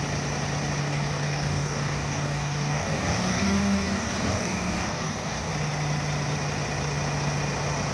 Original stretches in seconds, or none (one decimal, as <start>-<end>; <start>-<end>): 0.0-0.8; 5.5-7.9